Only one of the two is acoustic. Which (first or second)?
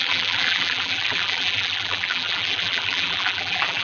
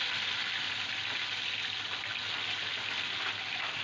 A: second